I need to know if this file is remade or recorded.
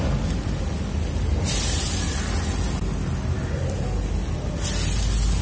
recorded